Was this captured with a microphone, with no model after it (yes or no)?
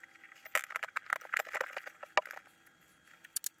yes